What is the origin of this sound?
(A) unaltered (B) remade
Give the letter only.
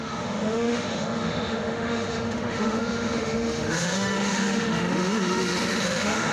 B